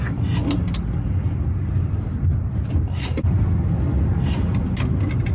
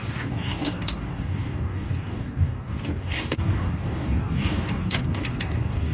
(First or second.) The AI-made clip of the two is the second